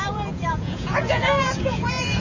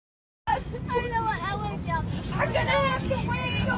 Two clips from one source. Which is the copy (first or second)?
first